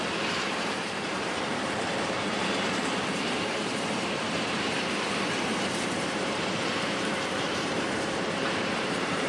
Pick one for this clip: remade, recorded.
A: remade